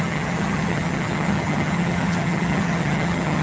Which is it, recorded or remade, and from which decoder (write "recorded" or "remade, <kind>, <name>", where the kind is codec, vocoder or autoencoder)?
remade, vocoder, HiFi-GAN